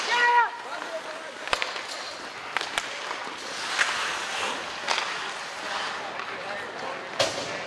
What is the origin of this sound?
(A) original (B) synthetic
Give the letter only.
A